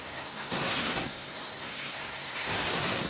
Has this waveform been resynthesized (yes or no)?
yes